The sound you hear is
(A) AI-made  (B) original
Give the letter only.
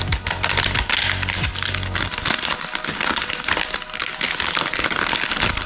B